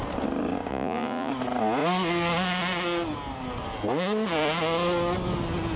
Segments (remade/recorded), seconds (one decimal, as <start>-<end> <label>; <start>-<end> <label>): 0.0-0.7 recorded; 0.7-1.3 remade; 1.3-5.8 recorded